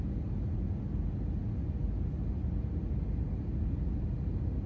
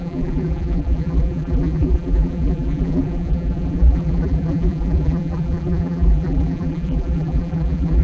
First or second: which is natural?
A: first